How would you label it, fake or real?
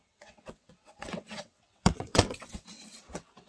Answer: fake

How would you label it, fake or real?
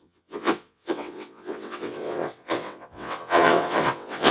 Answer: fake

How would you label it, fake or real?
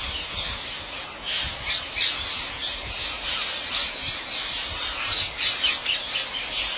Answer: real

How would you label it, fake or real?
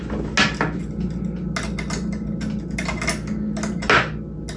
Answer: real